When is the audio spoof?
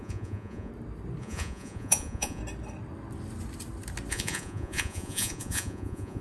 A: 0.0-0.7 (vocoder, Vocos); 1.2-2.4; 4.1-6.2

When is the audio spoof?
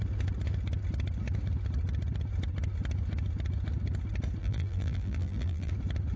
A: 4.4-5.7 (vocoder, BigVGAN v2)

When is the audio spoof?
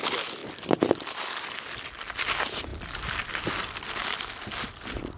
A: 0.4-1.8 (vocoder, BigVGAN v2); 2.7-3.5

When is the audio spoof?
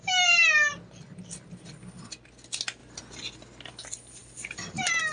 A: 4.2-5.1 (vocoder, BigVGAN v2)